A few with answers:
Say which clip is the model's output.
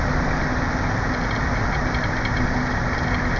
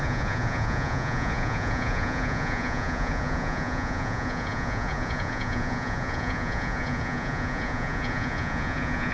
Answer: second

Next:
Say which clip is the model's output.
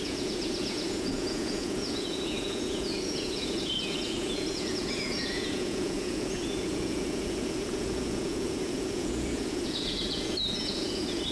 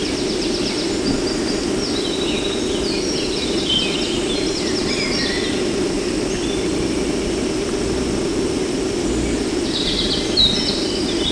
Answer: first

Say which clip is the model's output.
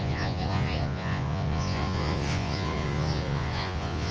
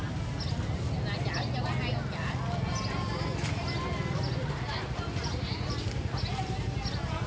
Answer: first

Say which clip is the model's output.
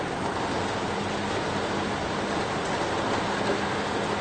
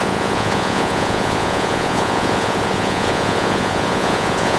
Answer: second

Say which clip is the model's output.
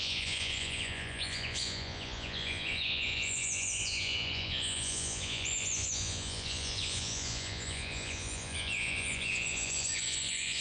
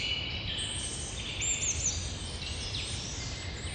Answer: first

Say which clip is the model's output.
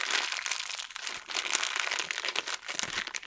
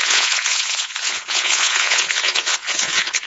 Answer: second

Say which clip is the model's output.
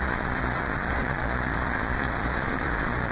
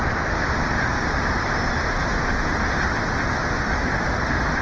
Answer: first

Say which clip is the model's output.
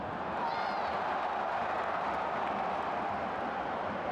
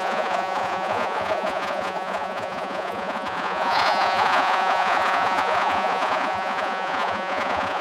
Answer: second